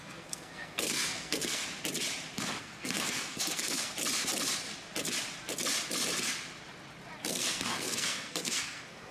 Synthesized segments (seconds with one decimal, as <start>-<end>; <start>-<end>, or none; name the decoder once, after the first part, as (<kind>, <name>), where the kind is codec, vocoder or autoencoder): 0.0-1.6 (codec, SNAC); 2.6-3.9; 7.2-9.1